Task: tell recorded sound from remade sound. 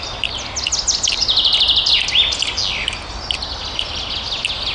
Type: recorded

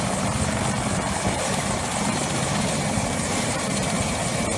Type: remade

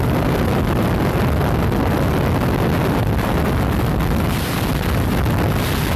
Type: recorded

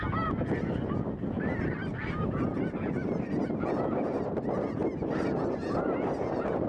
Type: recorded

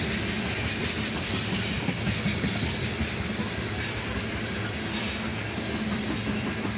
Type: recorded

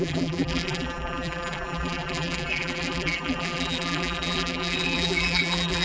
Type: remade